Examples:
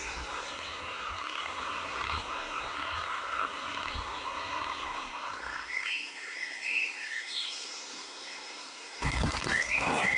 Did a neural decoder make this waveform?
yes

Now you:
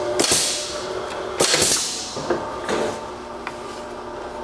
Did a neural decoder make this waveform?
no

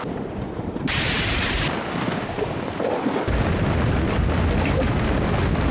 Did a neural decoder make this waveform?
no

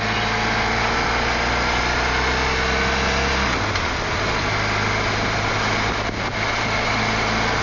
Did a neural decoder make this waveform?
no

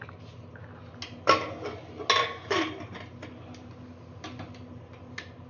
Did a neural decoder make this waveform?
no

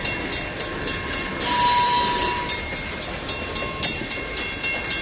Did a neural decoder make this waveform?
no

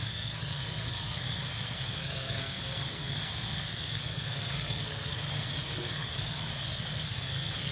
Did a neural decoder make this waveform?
yes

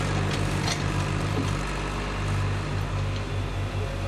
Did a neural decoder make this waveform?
no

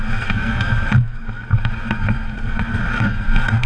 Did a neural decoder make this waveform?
yes